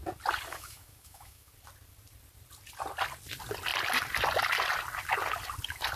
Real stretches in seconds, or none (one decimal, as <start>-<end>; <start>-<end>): 0.0-0.5; 1.5-6.0